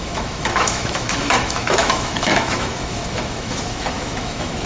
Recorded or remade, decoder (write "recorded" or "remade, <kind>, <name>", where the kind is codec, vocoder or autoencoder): remade, autoencoder, DAC-VAE